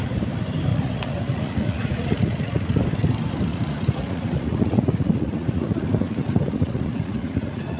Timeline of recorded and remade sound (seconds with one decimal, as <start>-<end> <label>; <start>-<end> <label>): 0.0-0.7 recorded; 0.7-2.8 remade; 2.8-3.5 recorded; 3.5-7.8 remade